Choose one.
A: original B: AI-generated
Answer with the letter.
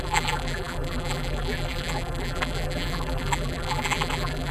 B